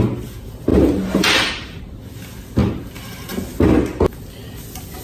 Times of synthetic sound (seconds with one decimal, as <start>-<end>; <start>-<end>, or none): 0.7-1.8